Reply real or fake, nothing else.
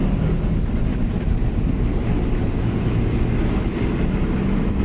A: real